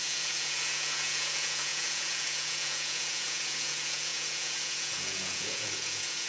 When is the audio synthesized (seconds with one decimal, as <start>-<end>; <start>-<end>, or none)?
0.0-6.3